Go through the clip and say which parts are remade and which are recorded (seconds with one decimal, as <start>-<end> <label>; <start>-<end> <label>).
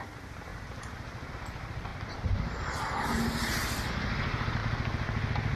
0.0-1.9 remade; 1.9-3.9 recorded; 3.9-4.6 remade; 4.6-5.6 recorded